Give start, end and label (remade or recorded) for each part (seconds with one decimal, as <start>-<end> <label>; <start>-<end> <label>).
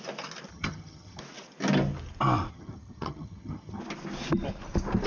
0.0-0.5 recorded; 0.5-1.2 remade; 1.2-2.5 recorded; 2.5-3.8 remade; 3.8-5.1 recorded